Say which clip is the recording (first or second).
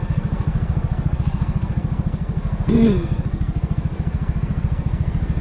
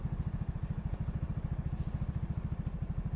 second